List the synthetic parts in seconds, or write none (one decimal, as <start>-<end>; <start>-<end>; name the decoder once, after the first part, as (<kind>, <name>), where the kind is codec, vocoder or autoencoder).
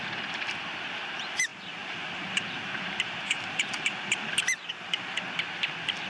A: 1.5-5.2 (vocoder, BigVGAN v2)